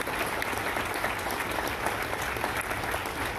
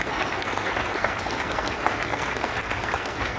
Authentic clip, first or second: first